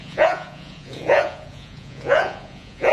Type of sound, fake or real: fake